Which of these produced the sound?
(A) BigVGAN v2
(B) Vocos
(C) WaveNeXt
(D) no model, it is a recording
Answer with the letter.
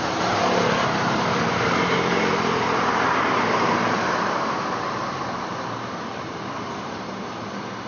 A